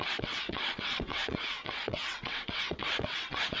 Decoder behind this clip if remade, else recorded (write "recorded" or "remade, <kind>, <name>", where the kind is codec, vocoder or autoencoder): remade, vocoder, WaveNeXt